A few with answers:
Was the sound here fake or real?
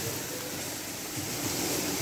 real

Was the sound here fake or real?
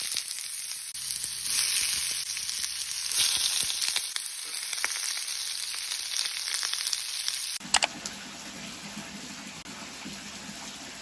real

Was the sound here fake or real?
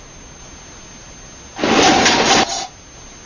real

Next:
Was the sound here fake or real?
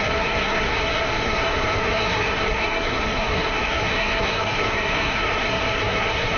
fake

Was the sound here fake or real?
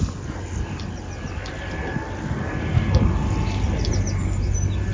real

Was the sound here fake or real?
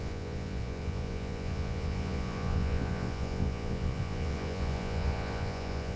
fake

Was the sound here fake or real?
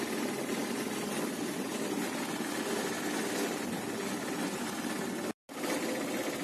real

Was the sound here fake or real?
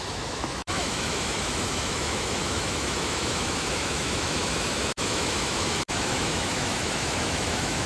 fake